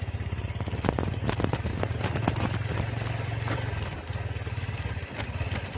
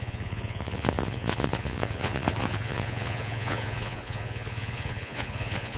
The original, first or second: first